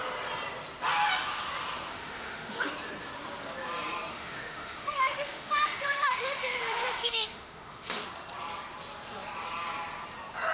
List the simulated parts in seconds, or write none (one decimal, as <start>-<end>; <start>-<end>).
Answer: 1.9-2.7; 4.1-8.0